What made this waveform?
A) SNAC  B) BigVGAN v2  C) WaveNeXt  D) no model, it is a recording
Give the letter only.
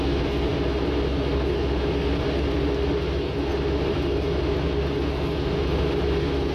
D